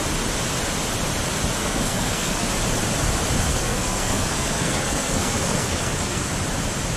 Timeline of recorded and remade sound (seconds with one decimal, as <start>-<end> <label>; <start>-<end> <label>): 0.0-1.6 recorded; 1.6-2.5 remade; 2.5-3.5 recorded; 3.5-6.3 remade; 6.3-7.0 recorded